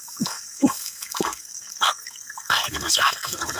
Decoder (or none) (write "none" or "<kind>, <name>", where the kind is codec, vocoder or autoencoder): codec, SNAC